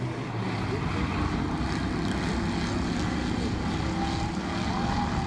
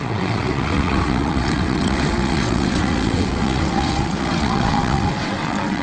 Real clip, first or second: first